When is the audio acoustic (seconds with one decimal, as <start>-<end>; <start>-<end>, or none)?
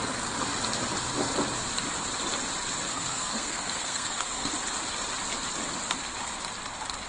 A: 0.0-2.9; 4.5-7.1